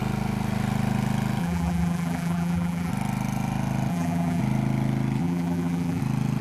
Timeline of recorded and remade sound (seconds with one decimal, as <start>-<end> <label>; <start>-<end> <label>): 0.0-1.4 recorded; 1.4-2.9 remade; 2.9-3.9 recorded; 3.9-4.4 remade; 4.4-5.2 recorded; 5.2-6.0 remade; 6.0-6.4 recorded